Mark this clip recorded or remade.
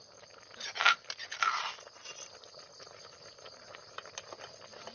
recorded